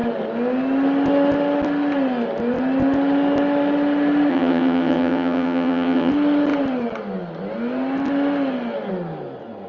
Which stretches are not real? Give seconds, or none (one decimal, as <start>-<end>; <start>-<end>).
4.3-6.1